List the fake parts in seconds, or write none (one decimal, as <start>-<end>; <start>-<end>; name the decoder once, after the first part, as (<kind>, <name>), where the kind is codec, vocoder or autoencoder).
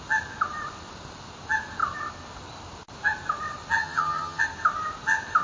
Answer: 3.8-4.4 (vocoder, HiFi-GAN)